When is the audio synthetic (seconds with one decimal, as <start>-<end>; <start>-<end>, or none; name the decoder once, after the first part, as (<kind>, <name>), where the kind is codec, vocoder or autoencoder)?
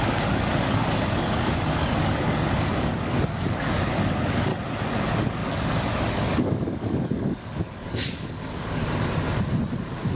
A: 0.0-4.5 (codec, DAC); 5.4-8.8